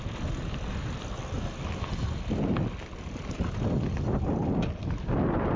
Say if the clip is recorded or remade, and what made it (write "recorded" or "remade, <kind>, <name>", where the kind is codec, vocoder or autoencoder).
recorded